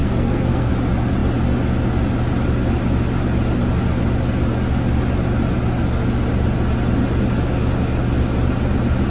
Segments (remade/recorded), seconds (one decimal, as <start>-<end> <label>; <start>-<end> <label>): 0.0-0.7 remade; 0.7-9.1 recorded